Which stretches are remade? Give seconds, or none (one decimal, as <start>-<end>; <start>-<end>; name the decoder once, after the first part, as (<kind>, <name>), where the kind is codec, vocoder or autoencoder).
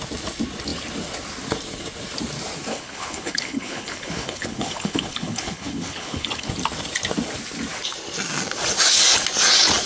2.7-6.5 (codec, HILCodec)